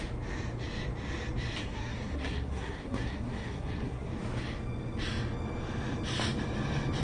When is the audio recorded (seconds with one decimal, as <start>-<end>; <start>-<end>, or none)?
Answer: 0.0-1.6; 4.1-7.0